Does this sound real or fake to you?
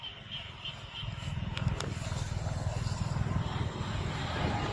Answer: real